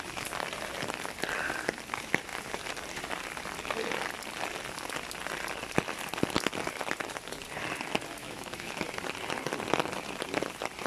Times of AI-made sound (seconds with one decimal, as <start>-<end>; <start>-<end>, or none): 8.2-8.7